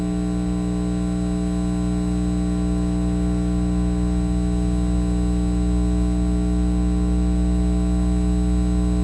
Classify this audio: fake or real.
real